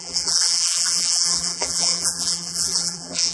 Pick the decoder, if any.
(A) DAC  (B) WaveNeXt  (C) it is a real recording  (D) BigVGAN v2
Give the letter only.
D